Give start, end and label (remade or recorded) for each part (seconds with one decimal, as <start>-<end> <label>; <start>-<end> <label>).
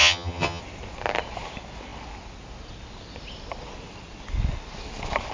0.0-0.6 remade; 0.6-5.3 recorded